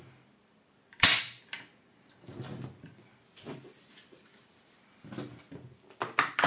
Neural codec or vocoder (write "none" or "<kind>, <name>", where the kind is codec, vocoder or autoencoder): none